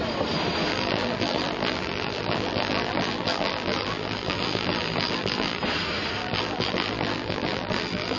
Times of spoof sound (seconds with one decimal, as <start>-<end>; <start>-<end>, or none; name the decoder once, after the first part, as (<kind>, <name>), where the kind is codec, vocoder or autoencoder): 0.7-5.6 (vocoder, BigVGAN v2); 6.2-8.2